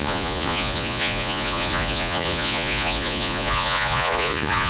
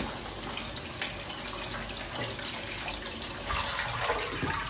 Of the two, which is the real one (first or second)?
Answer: second